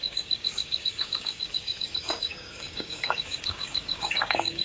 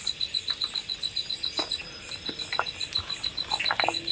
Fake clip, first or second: first